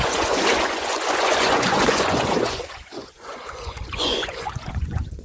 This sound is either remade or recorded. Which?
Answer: remade